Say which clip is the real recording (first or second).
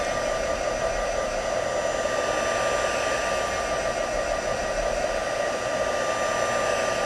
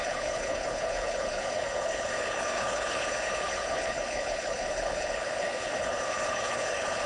first